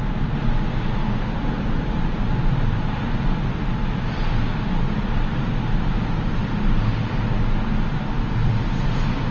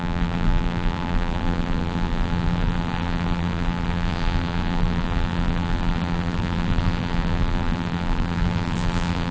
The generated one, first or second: second